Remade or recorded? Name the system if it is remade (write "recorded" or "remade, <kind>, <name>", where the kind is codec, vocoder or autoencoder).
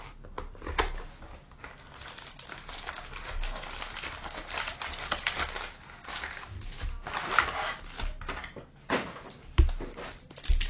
recorded